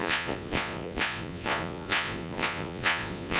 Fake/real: fake